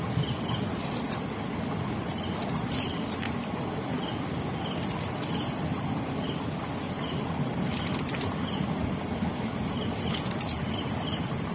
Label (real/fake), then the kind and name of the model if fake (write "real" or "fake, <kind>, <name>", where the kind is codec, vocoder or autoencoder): real